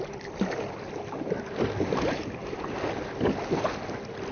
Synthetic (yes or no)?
no